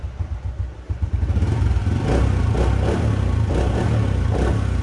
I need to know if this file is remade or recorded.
recorded